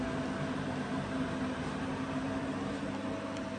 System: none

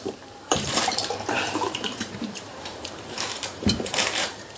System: vocoder, BigVGAN v2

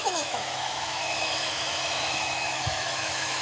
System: autoencoder, DAC-VAE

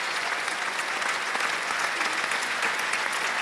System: vocoder, Vocos